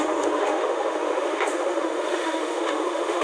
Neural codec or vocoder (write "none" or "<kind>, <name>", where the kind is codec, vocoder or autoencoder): autoencoder, DAC-VAE